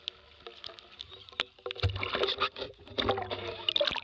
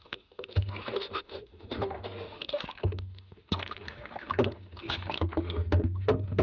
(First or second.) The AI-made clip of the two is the second